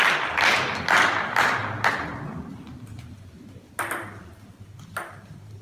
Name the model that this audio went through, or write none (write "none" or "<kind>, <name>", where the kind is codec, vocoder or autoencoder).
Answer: none